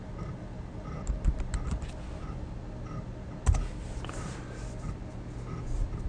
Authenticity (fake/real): real